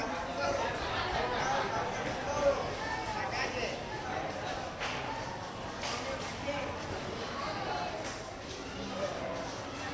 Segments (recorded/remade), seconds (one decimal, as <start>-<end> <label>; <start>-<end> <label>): 0.0-9.9 recorded